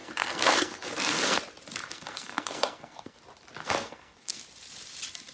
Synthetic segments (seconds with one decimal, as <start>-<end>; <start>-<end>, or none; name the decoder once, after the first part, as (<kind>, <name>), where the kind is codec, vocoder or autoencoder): 0.0-1.4 (codec, SNAC); 1.8-3.2; 3.6-4.4